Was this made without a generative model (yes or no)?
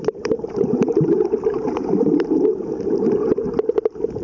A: no